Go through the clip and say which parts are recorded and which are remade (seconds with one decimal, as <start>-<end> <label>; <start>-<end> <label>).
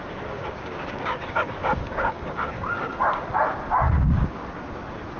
0.0-2.9 remade; 2.9-3.8 recorded; 3.8-4.4 remade; 4.4-5.2 recorded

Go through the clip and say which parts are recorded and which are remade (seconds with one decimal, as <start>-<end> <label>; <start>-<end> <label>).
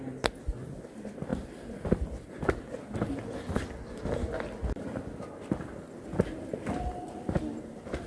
0.0-8.1 recorded